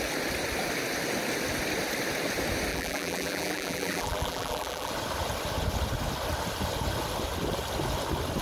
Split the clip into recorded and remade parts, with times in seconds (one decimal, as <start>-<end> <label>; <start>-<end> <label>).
0.0-2.7 recorded; 2.7-4.9 remade; 4.9-8.4 recorded